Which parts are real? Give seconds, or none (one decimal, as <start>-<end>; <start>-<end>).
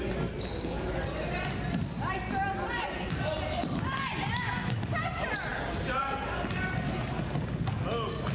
0.0-8.3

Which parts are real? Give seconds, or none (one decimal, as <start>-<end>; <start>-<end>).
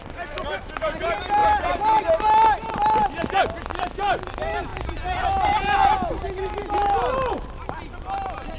0.0-3.7; 4.3-8.6